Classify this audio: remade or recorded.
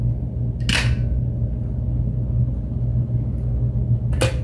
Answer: recorded